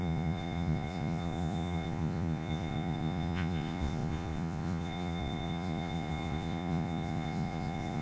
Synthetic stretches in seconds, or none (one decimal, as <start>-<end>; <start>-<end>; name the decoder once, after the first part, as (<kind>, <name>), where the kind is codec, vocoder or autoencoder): 0.0-8.0 (vocoder, Vocos)